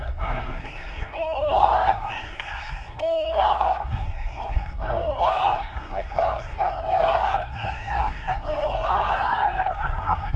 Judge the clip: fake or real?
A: fake